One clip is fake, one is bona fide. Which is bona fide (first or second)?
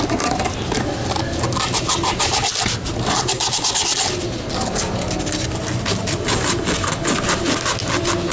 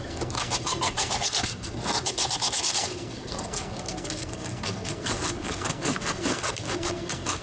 first